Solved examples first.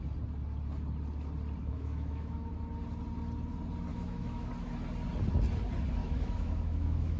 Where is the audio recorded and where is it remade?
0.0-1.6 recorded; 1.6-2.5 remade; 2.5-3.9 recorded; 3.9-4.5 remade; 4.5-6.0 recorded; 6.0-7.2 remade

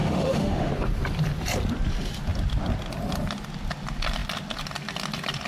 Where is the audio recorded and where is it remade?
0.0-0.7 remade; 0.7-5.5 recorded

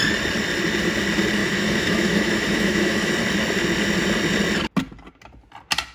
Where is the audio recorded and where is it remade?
0.0-1.4 recorded; 1.4-3.1 remade; 3.1-5.9 recorded